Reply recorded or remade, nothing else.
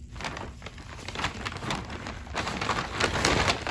recorded